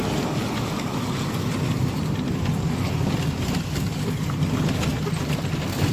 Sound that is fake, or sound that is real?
real